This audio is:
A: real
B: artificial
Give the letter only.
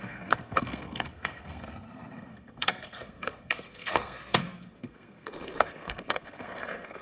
B